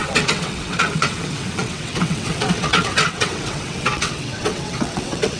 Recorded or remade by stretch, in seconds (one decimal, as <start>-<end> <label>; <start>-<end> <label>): 0.0-5.4 remade